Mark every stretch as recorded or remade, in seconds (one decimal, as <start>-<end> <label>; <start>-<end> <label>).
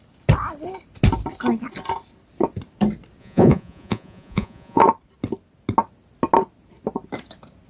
0.0-3.2 recorded; 3.2-4.8 remade; 4.8-7.7 recorded